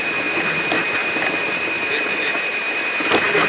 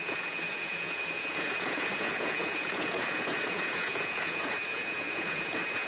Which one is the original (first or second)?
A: first